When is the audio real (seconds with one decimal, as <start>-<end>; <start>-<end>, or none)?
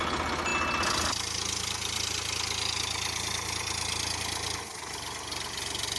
0.0-6.0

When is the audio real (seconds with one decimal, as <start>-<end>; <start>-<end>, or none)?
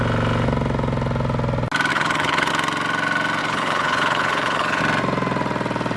0.0-1.9; 2.5-3.4; 4.8-6.0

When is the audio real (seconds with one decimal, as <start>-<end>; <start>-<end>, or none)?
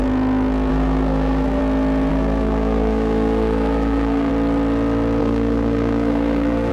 0.0-0.7; 1.6-2.1; 4.3-5.2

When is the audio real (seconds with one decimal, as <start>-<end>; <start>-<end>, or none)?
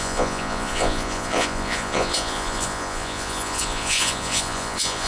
none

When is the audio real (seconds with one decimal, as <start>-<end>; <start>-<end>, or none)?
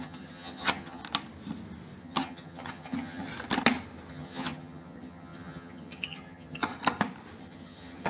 1.0-2.0; 3.3-4.1; 6.7-7.4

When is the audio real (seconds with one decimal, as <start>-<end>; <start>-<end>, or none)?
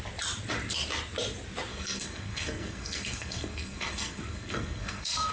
0.0-1.7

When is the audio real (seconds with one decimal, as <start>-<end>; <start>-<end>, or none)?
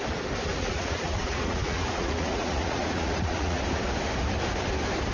0.0-0.5; 3.6-5.1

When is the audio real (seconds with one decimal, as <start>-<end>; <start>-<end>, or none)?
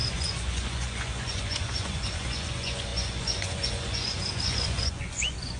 none